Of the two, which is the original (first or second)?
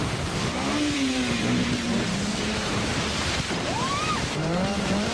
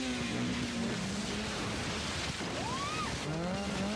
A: second